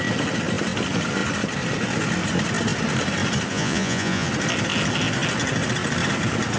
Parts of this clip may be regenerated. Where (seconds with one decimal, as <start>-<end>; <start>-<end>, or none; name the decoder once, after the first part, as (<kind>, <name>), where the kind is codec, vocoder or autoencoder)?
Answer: 3.5-4.3 (vocoder, Vocos)